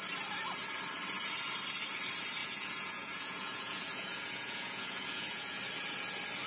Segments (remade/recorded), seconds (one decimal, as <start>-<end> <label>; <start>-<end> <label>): 0.0-2.4 recorded; 2.4-5.6 remade; 5.6-6.5 recorded